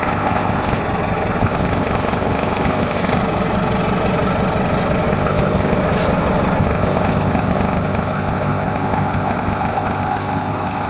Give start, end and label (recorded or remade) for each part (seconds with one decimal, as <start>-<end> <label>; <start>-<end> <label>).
0.0-0.8 remade; 0.8-1.4 recorded; 1.4-3.2 remade; 3.2-5.1 recorded; 5.1-5.8 remade; 5.8-6.6 recorded; 6.6-10.9 remade